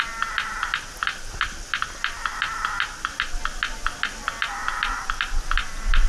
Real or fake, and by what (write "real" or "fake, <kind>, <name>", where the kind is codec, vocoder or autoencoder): real